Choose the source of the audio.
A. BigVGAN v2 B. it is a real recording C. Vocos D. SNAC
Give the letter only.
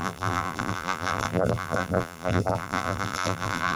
A